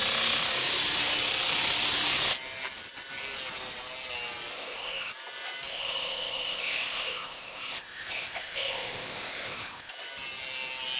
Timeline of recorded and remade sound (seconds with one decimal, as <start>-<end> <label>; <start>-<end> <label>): 0.0-4.5 recorded; 4.5-5.1 remade; 5.1-5.7 recorded; 5.7-9.9 remade; 9.9-11.0 recorded